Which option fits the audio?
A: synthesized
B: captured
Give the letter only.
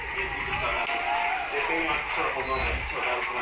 B